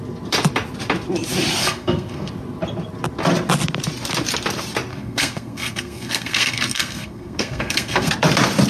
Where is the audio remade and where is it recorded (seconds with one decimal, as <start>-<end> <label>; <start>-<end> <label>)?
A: 0.0-1.6 recorded; 1.6-2.3 remade; 2.3-4.9 recorded; 4.9-8.1 remade; 8.1-8.7 recorded